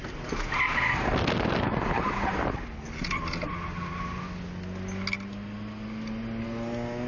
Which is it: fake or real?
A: real